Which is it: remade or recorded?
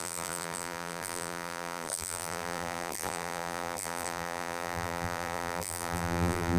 remade